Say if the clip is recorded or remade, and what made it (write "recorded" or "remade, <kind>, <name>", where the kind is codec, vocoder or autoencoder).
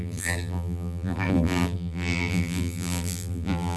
remade, vocoder, BigVGAN v2